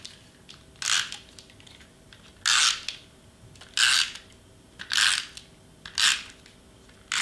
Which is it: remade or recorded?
recorded